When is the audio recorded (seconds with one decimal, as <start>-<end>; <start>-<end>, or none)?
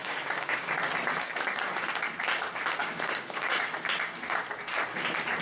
0.6-2.8; 3.6-5.4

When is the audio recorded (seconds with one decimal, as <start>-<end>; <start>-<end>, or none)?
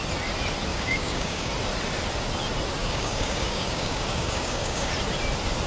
0.0-0.7; 1.5-2.8; 4.9-5.7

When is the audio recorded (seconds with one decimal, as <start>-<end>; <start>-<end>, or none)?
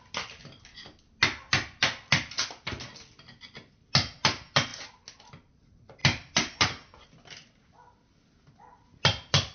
0.0-9.5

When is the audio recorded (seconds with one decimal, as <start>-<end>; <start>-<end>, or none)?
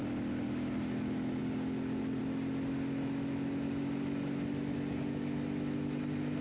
0.0-6.4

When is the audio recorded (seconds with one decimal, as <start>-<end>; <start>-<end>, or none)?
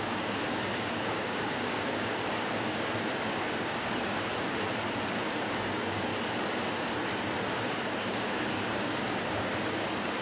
4.3-5.6; 6.1-7.6